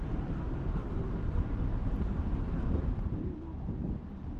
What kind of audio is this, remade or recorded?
recorded